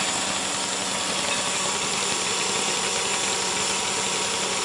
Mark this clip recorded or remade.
recorded